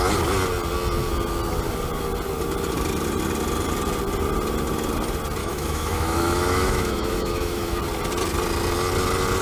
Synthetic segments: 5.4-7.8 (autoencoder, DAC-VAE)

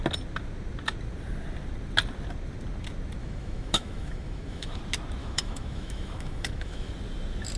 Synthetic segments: 3.2-4.8 (autoencoder, DAC-VAE); 5.2-6.9

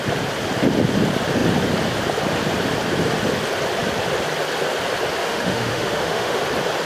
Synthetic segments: 5.2-6.4 (autoencoder, DAC-VAE)

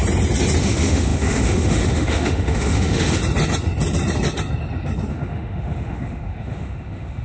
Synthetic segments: 0.6-3.2 (autoencoder, DAC-VAE); 5.1-7.2

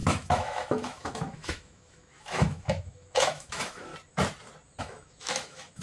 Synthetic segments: 0.0-3.9 (autoencoder, DAC-VAE); 4.8-5.8

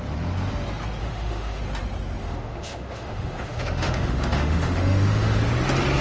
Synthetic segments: 1.0-1.6 (autoencoder, DAC-VAE); 2.2-5.4

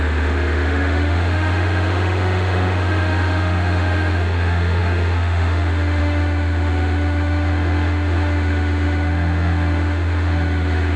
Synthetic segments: 0.0-11.0 (autoencoder, DAC-VAE)

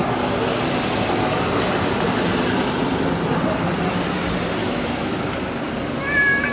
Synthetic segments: 4.6-5.2 (autoencoder, DAC-VAE)